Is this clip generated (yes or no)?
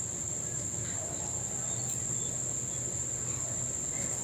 no